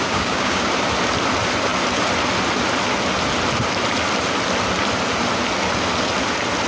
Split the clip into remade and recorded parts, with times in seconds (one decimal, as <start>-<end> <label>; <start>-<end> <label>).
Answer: 0.0-0.7 remade; 0.7-6.7 recorded